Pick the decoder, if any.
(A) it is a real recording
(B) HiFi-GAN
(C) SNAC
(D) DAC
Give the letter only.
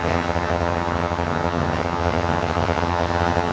B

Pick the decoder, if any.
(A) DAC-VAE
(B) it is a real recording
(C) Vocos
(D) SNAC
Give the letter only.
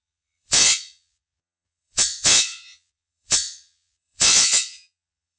C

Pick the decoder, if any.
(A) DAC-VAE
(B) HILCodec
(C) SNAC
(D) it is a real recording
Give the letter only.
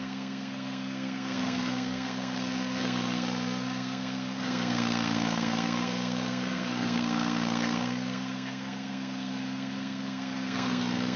C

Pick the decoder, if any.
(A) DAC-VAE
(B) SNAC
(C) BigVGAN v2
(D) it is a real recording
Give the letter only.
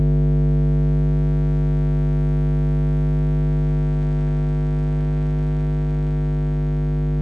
D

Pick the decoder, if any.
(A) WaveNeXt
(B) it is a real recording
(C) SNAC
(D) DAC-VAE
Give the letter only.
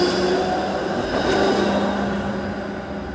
B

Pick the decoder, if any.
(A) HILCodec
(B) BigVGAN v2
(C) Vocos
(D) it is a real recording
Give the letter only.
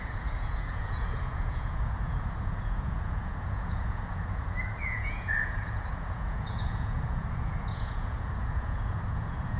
C